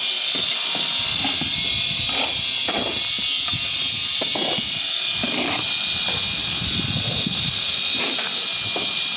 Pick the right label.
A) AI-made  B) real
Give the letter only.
B